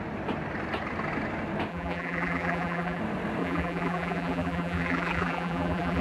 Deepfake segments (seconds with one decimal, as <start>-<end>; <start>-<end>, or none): 1.7-3.0; 3.4-6.0